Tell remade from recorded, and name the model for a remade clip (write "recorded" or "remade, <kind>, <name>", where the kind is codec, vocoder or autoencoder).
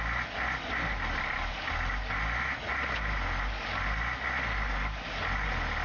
recorded